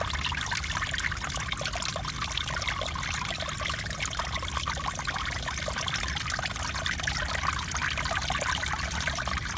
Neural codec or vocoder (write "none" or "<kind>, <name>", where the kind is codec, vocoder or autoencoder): none